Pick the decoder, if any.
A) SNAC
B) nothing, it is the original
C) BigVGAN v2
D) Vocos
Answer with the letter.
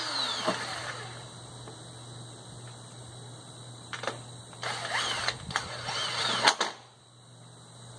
B